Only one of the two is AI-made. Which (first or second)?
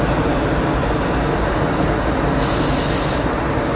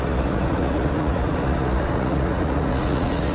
second